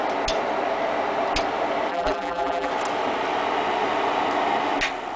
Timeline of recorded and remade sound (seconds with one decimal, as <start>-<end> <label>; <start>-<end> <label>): 0.0-1.9 recorded; 1.9-2.7 remade; 2.7-5.2 recorded